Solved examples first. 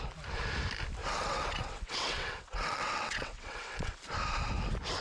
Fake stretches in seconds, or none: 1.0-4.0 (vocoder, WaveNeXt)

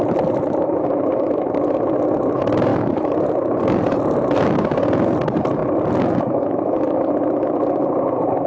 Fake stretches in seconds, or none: none

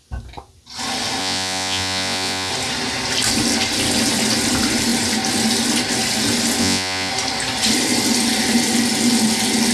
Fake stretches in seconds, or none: 1.2-2.5 (vocoder, Vocos); 6.6-7.1

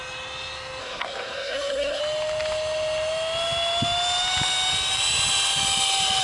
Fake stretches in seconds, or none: 0.8-2.0 (codec, SNAC)

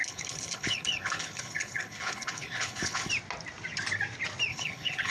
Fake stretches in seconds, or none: 0.0-3.1 (codec, HILCodec); 4.5-5.1

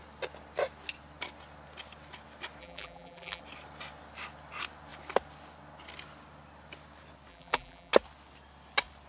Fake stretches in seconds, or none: 2.6-3.4 (vocoder, BigVGAN v2); 7.3-7.9